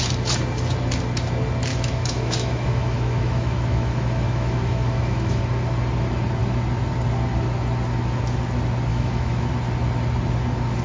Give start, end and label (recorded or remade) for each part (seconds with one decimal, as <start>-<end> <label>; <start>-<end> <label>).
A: 0.0-1.7 recorded; 1.7-5.4 remade; 5.4-8.9 recorded; 8.9-9.5 remade; 9.5-10.8 recorded